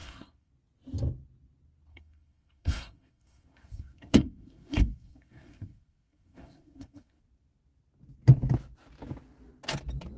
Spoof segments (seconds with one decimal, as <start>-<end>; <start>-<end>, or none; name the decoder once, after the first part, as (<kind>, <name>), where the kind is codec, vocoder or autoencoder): 0.0-0.5 (codec, SNAC); 1.9-7.2